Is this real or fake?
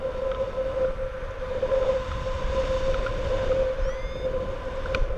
real